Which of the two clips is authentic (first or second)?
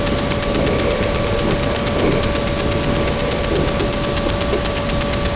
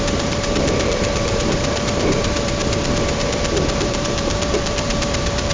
first